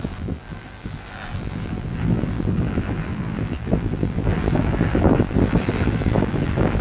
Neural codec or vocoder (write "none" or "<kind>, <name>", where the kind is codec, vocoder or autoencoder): vocoder, BigVGAN v2